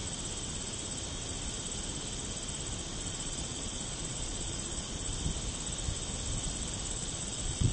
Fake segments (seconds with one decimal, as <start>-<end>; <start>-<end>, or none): 3.1-5.1; 6.9-7.7

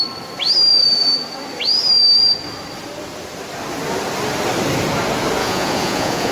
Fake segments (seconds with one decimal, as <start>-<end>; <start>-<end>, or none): 5.4-6.3

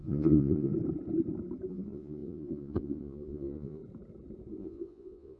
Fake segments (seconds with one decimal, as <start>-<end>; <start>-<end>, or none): 0.0-0.7; 1.7-3.8; 4.6-5.4

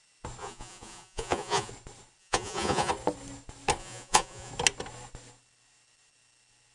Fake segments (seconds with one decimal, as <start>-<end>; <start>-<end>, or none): 0.4-1.7; 2.2-2.9; 3.8-4.5

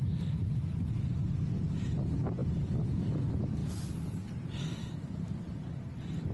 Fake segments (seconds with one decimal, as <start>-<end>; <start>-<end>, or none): none